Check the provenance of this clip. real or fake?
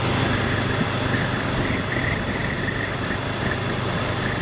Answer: real